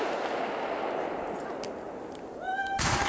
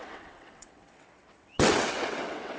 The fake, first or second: second